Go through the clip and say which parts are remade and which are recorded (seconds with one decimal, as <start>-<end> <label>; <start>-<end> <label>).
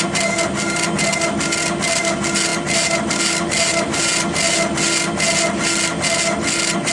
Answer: 0.0-6.9 recorded